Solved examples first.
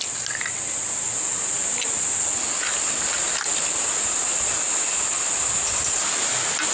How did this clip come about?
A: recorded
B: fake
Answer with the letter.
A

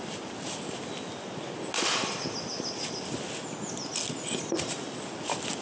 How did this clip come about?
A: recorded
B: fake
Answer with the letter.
A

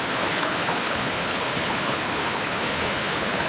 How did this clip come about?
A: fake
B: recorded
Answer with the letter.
A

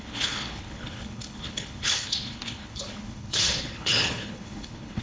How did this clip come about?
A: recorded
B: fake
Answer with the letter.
B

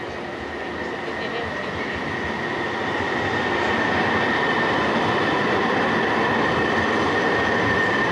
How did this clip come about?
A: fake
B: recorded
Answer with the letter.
B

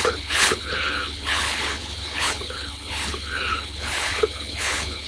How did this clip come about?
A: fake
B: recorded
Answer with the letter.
A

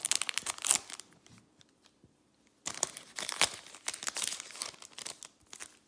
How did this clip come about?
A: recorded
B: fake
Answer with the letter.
A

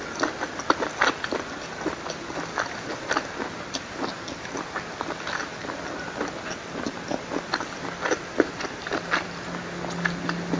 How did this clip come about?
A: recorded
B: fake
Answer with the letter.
A